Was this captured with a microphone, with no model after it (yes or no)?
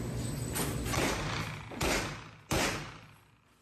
yes